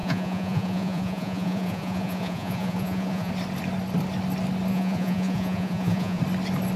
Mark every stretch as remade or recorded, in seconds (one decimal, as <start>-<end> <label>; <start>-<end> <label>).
0.0-3.3 remade; 3.3-4.7 recorded; 4.7-6.2 remade; 6.2-6.8 recorded

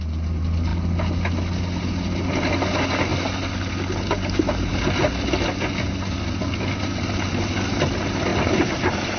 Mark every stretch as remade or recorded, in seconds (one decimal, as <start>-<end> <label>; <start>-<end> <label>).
0.0-9.2 recorded

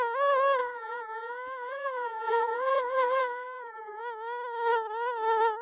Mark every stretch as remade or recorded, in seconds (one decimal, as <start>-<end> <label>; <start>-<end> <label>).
0.0-0.6 recorded; 0.6-4.0 remade; 4.0-5.6 recorded

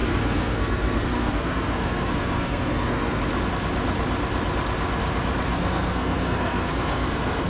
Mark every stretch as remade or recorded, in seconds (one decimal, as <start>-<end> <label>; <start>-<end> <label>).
0.0-3.2 remade; 3.2-5.5 recorded; 5.5-7.5 remade

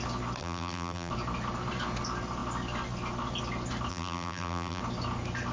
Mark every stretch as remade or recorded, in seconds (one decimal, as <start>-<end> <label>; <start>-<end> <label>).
0.0-0.4 recorded; 0.4-1.1 remade; 1.1-3.9 recorded; 3.9-4.8 remade; 4.8-5.5 recorded

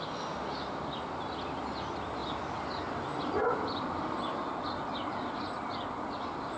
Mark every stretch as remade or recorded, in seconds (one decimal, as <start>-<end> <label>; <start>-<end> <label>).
0.0-2.2 recorded; 2.2-3.0 remade; 3.0-3.4 recorded; 3.4-5.3 remade; 5.3-6.6 recorded